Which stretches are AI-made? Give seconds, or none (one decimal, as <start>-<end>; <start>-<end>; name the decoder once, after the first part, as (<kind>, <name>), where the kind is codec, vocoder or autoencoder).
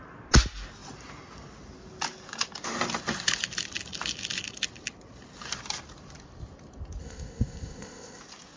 7.0-8.2 (codec, ZipCodec)